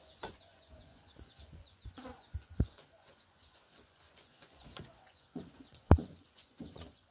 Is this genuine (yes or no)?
no